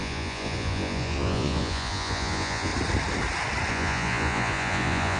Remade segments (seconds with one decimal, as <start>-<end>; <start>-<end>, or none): 0.0-2.7; 3.7-5.2